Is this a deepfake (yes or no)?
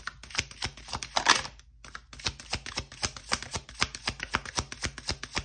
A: no